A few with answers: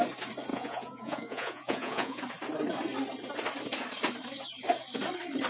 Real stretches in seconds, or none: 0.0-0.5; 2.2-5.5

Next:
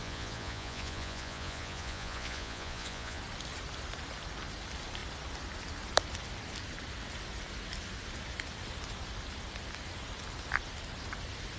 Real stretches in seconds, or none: 3.2-11.6

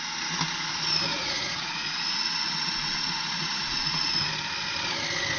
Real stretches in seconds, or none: 0.0-1.1; 4.3-5.4

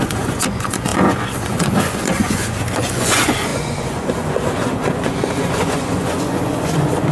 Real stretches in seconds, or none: none

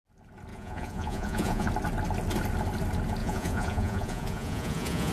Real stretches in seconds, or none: 0.0-0.5; 1.7-3.2

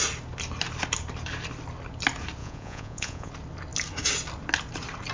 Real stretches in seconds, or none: 0.0-2.4; 3.3-5.1

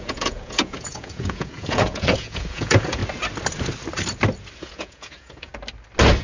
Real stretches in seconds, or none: 3.0-4.6; 5.5-6.2